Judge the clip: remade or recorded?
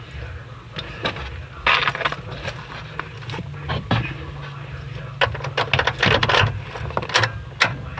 recorded